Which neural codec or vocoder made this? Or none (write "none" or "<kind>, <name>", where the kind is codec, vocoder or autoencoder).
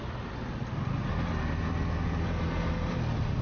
none